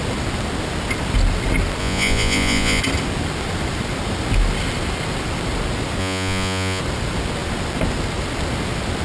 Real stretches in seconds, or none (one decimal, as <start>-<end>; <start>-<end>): 0.0-1.8; 2.8-6.0; 6.8-9.0